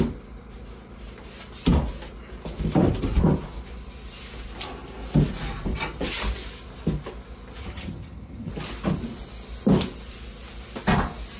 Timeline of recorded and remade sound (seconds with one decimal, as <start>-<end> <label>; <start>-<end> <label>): 0.0-7.6 recorded; 7.6-8.5 remade; 8.5-11.4 recorded